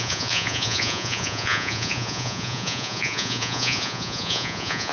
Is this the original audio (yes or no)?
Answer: no